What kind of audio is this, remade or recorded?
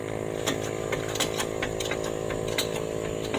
recorded